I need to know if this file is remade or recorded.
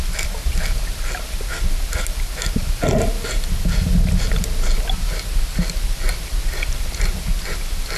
recorded